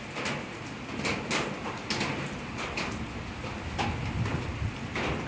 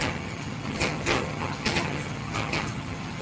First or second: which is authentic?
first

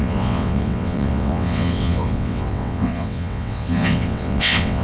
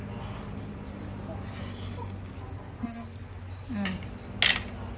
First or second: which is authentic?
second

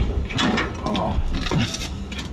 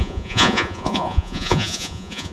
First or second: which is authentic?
first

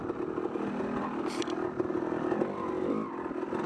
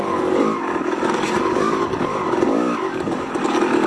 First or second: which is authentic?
first